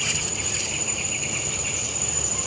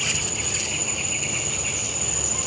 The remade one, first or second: first